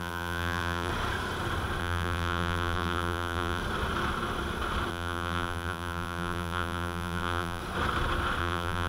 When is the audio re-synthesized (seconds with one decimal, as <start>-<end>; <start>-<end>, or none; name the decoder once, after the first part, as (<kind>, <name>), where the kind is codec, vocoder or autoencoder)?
0.0-0.9 (vocoder, BigVGAN v2); 1.8-3.6; 4.9-7.6; 8.4-8.9